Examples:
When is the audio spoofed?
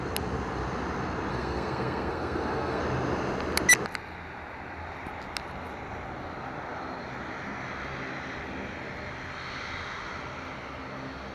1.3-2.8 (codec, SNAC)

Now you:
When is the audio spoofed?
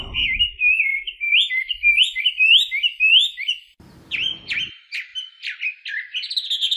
0.9-2.2 (vocoder, BigVGAN v2)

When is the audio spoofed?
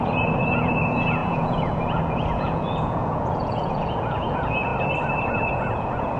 0.0-4.7 (vocoder, Vocos); 5.2-6.2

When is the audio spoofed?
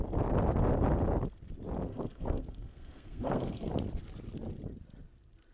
1.8-3.7 (codec, SNAC)